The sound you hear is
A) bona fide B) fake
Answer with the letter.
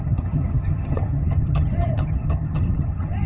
B